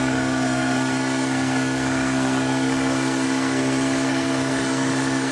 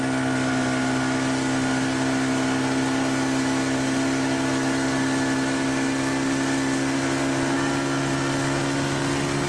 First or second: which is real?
second